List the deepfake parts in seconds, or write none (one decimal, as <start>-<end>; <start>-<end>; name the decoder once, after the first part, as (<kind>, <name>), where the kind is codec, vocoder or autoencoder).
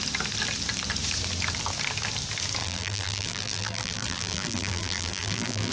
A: 2.6-5.7 (vocoder, BigVGAN v2)